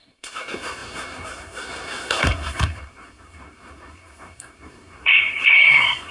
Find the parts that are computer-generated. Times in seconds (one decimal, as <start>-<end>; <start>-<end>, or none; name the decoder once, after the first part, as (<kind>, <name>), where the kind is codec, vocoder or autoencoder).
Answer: 0.0-6.1 (codec, SNAC)